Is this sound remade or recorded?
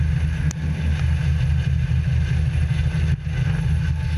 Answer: recorded